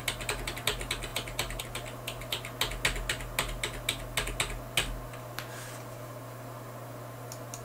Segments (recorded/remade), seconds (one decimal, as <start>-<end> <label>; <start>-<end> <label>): 0.0-7.6 recorded